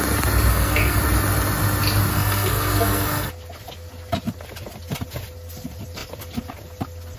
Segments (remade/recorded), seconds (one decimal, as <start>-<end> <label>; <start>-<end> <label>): 0.0-0.5 recorded; 0.5-1.0 remade; 1.0-2.1 recorded; 2.1-3.3 remade; 3.3-7.2 recorded